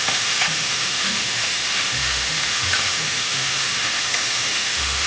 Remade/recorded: remade